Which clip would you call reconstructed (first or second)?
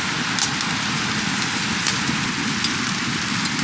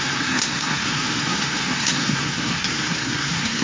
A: second